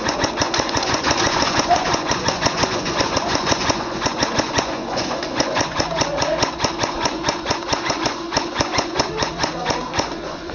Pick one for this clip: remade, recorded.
remade